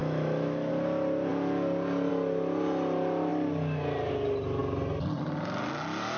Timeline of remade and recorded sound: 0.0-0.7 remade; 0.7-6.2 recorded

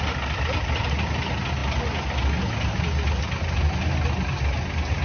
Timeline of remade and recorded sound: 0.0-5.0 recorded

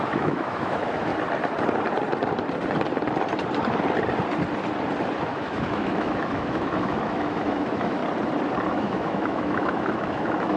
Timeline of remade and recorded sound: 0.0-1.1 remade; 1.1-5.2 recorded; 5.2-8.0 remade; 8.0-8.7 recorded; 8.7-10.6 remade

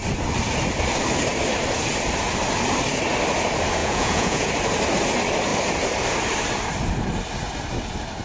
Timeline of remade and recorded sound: 0.0-3.8 recorded; 3.8-4.5 remade; 4.5-8.2 recorded